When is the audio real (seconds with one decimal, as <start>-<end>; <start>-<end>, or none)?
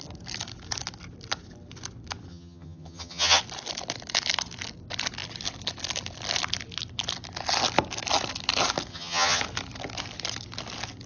0.0-2.3; 3.4-8.9; 9.4-11.1